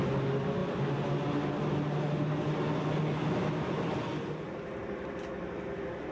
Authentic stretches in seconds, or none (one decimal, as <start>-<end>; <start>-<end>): 0.0-6.1